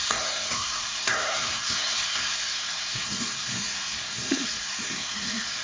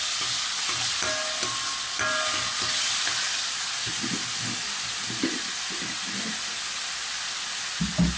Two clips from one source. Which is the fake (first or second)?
first